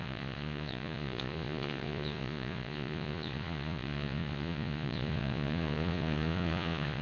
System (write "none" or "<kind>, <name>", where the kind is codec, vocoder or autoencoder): vocoder, Vocos